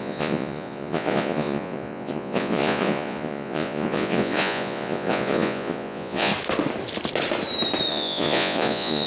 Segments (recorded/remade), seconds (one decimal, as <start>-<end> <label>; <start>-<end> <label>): 0.0-6.3 remade; 6.3-7.9 recorded; 7.9-9.1 remade